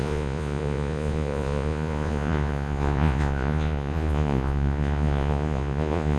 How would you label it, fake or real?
fake